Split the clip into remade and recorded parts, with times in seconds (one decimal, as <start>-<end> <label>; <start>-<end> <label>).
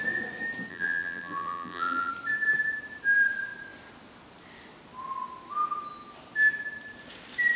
0.0-0.7 recorded; 0.7-2.1 remade; 2.1-7.6 recorded